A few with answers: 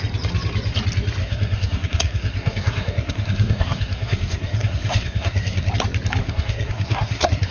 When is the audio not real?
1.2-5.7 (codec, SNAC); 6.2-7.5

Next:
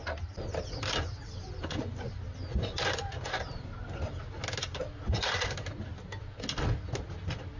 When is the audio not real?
0.0-1.9 (vocoder, BigVGAN v2)

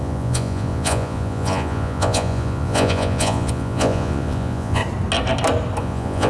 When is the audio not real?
0.0-4.8 (vocoder, Vocos); 5.8-6.3